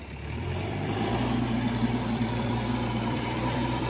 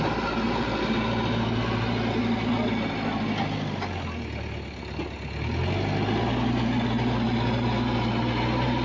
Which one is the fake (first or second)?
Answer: first